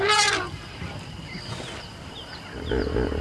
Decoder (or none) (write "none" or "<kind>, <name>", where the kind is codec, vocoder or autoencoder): none